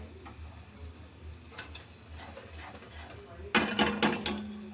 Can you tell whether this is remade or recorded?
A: recorded